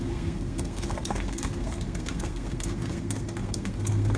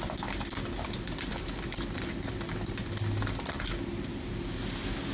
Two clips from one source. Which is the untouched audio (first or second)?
second